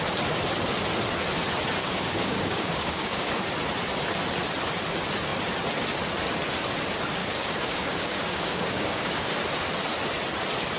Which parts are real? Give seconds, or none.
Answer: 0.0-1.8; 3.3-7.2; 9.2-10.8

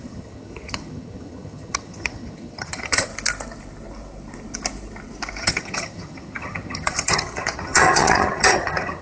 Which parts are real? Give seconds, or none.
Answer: 3.1-5.4

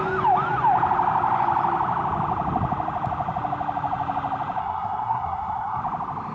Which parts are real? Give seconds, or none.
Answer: 0.0-4.6; 5.8-6.3

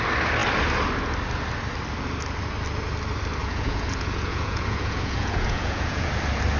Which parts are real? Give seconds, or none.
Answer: 0.0-3.4; 6.1-6.6

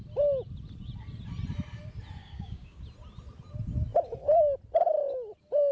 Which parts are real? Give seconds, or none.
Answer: 0.0-2.2; 2.8-5.7